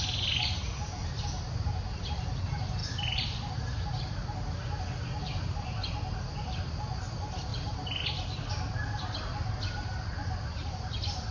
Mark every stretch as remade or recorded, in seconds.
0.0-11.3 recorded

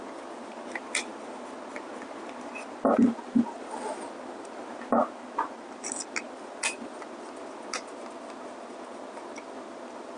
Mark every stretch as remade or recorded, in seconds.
0.0-10.2 recorded

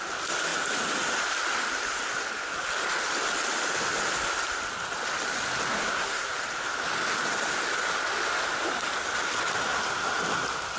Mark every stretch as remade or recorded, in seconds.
0.0-5.7 recorded; 5.7-6.3 remade; 6.3-10.8 recorded

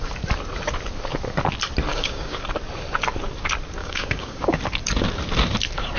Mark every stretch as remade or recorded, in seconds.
0.0-1.9 recorded; 1.9-2.4 remade; 2.4-3.8 recorded; 3.8-4.6 remade; 4.6-6.0 recorded

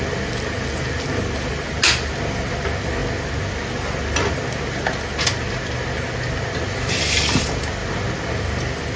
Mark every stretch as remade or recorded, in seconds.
0.0-9.0 recorded

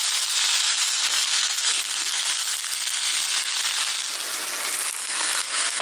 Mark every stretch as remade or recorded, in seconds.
0.0-1.2 recorded; 1.2-2.2 remade; 2.2-2.7 recorded; 2.7-3.6 remade; 3.6-5.0 recorded; 5.0-5.8 remade

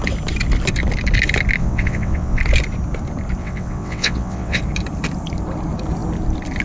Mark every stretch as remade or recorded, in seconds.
0.0-1.6 recorded; 1.6-2.4 remade; 2.4-3.4 recorded; 3.4-4.6 remade; 4.6-6.6 recorded